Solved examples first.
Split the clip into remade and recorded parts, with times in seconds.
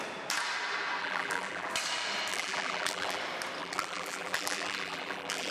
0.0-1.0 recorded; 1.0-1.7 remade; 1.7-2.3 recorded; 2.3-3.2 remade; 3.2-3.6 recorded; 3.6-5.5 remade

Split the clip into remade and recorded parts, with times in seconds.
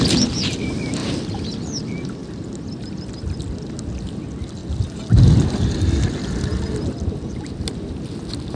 0.0-8.6 recorded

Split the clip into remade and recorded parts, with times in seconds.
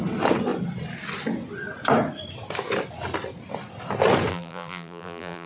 0.0-4.3 recorded; 4.3-5.5 remade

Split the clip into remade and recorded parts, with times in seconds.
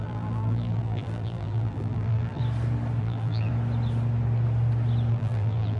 0.0-2.4 remade; 2.4-3.0 recorded; 3.0-3.5 remade; 3.5-5.1 recorded; 5.1-5.8 remade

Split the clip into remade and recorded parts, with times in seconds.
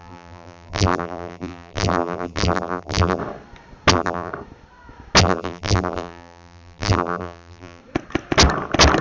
0.0-3.2 remade; 3.2-3.9 recorded; 3.9-4.3 remade; 4.3-5.2 recorded; 5.2-7.8 remade; 7.8-9.0 recorded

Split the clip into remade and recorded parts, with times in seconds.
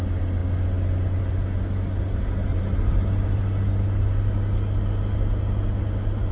0.0-2.5 recorded; 2.5-3.4 remade; 3.4-6.3 recorded